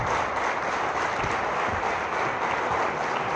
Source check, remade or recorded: recorded